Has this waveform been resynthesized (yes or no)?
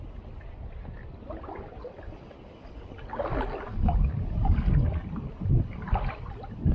no